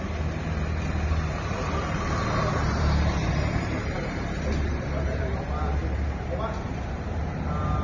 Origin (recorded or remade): remade